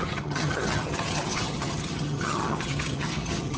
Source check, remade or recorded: remade